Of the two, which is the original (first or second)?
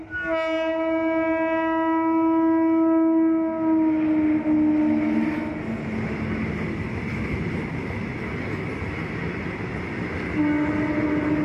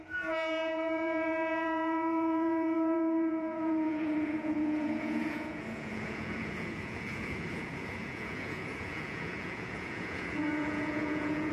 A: first